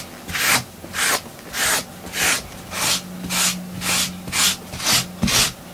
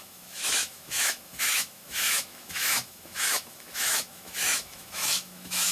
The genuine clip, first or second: first